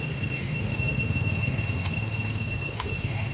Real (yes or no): no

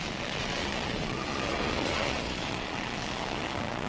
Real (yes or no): no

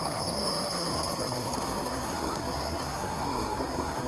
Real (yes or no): no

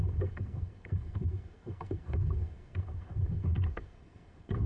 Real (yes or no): no